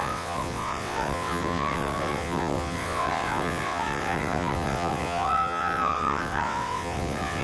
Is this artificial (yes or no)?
yes